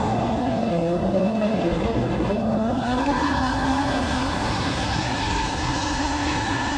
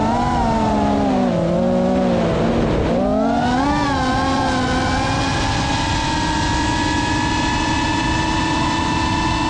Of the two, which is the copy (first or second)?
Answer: first